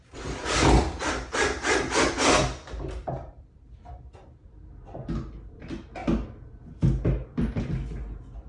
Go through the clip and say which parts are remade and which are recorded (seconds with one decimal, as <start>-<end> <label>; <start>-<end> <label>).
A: 0.0-8.5 recorded